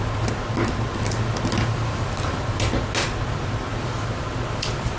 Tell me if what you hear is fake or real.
real